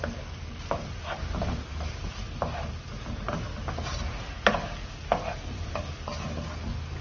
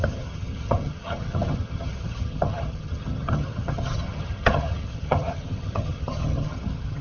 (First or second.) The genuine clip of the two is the first